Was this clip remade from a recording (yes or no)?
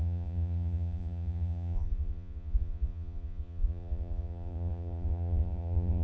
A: yes